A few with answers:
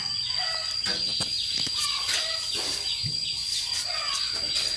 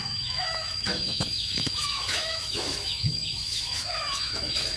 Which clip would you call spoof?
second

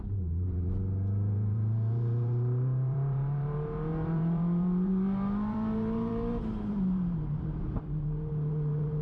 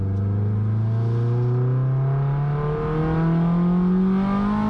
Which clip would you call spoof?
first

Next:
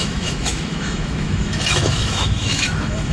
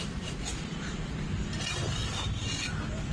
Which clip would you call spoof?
first